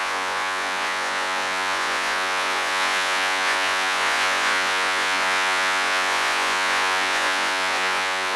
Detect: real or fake fake